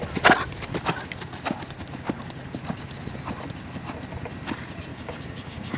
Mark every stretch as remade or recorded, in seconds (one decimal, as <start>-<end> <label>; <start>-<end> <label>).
0.0-4.9 recorded; 4.9-5.8 remade